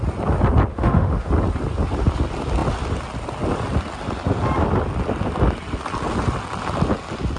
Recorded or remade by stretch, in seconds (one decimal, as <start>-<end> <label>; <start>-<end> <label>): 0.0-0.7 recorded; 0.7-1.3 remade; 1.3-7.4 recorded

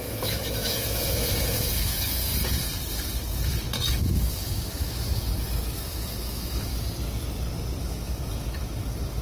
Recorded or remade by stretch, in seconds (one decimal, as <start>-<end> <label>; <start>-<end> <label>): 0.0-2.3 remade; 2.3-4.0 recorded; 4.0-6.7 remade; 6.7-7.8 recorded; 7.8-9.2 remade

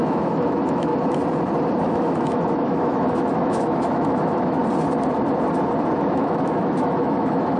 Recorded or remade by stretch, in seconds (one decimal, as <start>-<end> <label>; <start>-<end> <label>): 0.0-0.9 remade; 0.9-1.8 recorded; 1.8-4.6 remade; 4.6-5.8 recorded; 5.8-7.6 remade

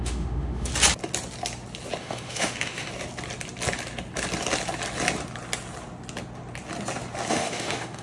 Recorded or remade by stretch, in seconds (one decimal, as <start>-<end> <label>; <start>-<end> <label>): 0.0-0.7 remade; 0.7-2.0 recorded; 2.0-2.9 remade; 2.9-7.3 recorded; 7.3-8.0 remade

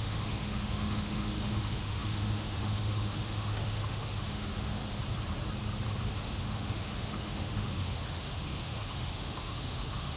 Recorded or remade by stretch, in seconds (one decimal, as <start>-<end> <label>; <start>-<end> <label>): 0.0-4.8 remade; 4.8-6.0 recorded; 6.0-10.2 remade